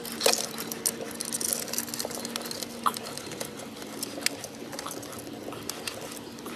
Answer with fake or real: real